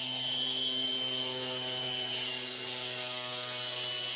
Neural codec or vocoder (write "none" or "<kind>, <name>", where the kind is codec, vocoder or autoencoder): codec, DAC